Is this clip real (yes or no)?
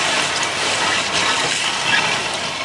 yes